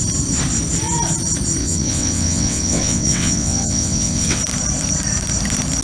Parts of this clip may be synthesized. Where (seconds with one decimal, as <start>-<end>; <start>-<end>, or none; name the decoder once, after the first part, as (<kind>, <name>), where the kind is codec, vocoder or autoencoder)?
1.6-4.4 (vocoder, WaveNeXt)